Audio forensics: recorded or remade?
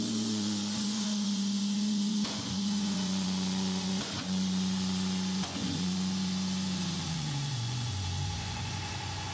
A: remade